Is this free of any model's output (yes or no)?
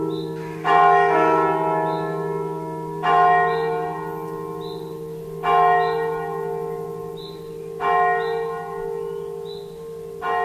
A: yes